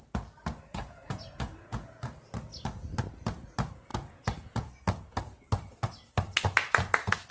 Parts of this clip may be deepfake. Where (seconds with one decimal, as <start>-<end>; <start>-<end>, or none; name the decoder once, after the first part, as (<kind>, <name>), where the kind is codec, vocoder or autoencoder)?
0.7-1.9 (vocoder, Vocos); 3.9-4.7